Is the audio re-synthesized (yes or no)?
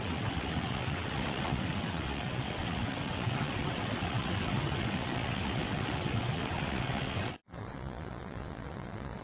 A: yes